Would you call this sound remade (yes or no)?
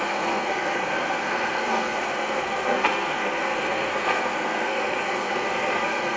yes